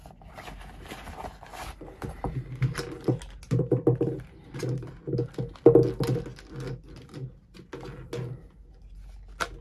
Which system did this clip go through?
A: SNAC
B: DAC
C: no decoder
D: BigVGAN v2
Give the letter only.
C